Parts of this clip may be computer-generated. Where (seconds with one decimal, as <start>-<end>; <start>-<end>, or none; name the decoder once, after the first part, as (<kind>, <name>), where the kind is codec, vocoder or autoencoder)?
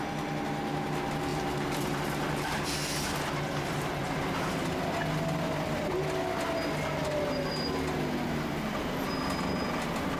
1.3-2.0 (vocoder, BigVGAN v2)